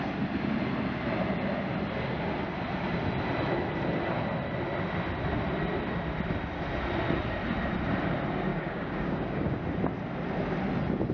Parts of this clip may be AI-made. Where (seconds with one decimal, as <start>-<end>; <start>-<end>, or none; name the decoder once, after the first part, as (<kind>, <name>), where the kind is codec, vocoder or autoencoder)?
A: 8.5-9.6 (codec, DAC)